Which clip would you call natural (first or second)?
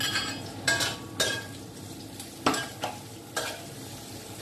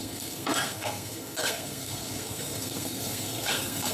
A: first